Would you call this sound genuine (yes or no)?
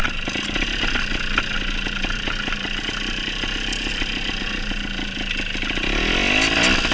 yes